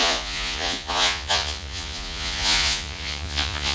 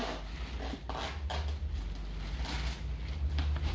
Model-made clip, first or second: first